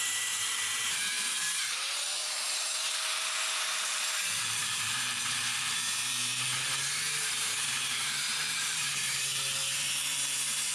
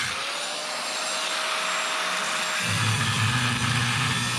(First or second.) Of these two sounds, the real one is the second